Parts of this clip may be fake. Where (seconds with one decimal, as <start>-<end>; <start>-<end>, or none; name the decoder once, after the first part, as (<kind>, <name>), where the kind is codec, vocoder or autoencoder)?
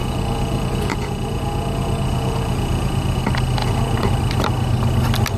0.0-3.2 (vocoder, Vocos); 3.6-4.1